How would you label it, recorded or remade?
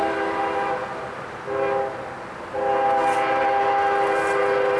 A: recorded